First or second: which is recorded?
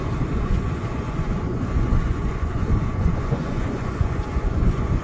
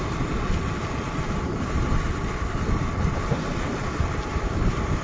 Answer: second